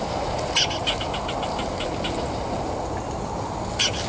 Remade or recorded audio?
recorded